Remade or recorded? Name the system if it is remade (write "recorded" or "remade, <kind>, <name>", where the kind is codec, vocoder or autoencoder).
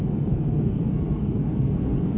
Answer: remade, codec, SNAC